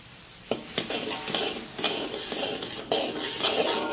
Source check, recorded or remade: recorded